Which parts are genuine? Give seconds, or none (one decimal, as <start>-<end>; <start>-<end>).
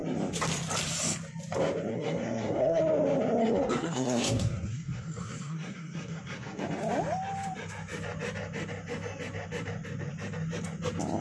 0.0-1.9; 2.8-3.4; 6.6-11.2